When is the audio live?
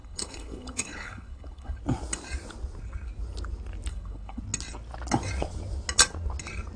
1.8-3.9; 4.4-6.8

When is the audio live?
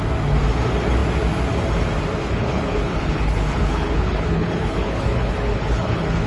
0.0-2.2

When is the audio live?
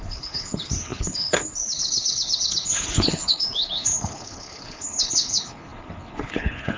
none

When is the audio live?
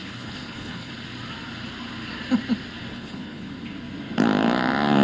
0.9-2.9; 3.5-5.0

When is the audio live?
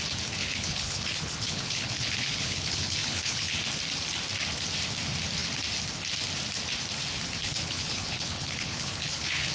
0.0-0.4; 3.6-7.4